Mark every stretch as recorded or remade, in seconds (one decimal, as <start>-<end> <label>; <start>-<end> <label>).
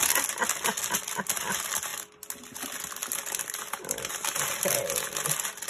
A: 0.0-5.7 recorded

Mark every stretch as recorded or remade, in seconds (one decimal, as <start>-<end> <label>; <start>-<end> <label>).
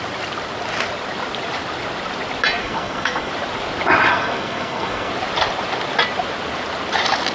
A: 0.0-2.6 recorded; 2.6-3.3 remade; 3.3-4.1 recorded; 4.1-5.1 remade; 5.1-7.3 recorded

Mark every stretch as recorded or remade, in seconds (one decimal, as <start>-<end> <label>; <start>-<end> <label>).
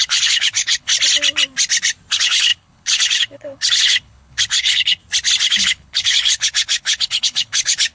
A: 0.0-0.9 remade; 0.9-2.1 recorded; 2.1-5.0 remade; 5.0-5.5 recorded; 5.5-7.9 remade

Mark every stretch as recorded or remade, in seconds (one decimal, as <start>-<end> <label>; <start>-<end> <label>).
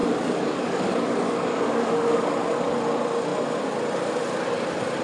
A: 0.0-2.7 remade; 2.7-5.0 recorded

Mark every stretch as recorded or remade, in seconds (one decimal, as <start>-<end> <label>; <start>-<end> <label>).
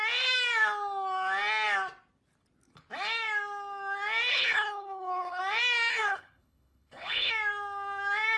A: 0.0-4.3 recorded; 4.3-5.4 remade; 5.4-5.9 recorded; 5.9-7.3 remade; 7.3-8.4 recorded